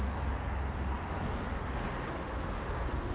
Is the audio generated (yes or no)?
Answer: no